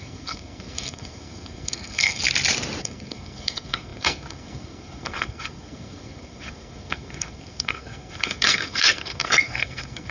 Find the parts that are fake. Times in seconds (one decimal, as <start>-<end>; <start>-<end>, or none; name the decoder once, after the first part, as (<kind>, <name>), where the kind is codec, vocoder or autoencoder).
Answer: 0.0-2.2 (codec, SNAC); 2.8-10.1

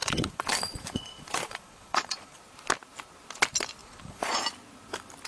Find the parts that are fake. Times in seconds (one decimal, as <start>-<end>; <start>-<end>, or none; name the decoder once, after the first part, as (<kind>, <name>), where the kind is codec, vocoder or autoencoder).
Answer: 0.0-2.4 (vocoder, Vocos); 3.8-4.4

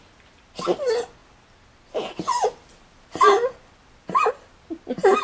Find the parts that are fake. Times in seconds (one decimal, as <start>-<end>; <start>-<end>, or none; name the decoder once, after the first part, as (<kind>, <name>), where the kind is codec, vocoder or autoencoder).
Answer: none

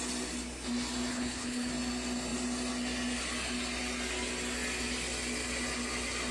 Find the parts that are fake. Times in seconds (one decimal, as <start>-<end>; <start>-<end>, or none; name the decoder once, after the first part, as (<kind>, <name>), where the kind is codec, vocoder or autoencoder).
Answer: 1.1-1.7 (codec, HILCodec)

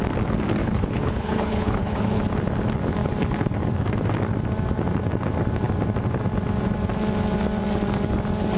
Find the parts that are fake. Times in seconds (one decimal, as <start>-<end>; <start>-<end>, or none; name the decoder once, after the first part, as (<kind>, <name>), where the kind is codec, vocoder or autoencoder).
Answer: 0.6-2.2 (codec, HILCodec)